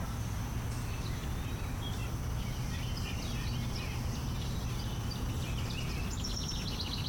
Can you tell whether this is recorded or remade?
recorded